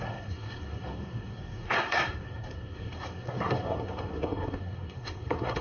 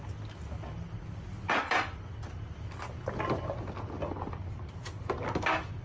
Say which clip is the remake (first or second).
first